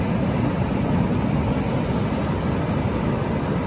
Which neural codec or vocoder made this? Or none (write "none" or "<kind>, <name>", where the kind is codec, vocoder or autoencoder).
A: none